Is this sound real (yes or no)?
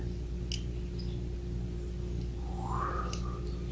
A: yes